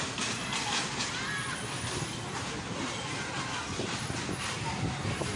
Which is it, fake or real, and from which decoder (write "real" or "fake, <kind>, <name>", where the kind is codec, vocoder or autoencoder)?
real